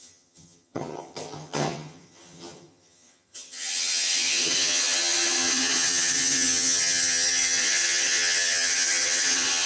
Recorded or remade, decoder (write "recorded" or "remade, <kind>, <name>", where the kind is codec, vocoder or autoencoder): remade, vocoder, HiFi-GAN